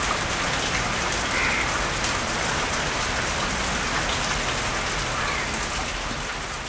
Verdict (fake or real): real